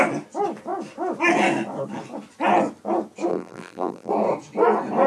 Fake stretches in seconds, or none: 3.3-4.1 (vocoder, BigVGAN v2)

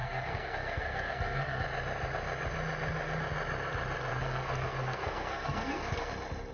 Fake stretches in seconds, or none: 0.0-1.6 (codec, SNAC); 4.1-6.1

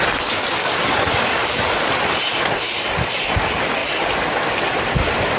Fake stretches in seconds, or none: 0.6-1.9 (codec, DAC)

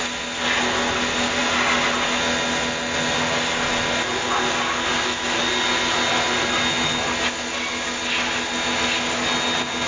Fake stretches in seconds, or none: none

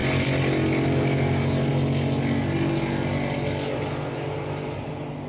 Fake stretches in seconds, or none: none